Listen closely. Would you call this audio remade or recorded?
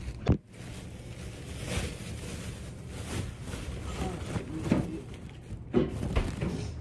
recorded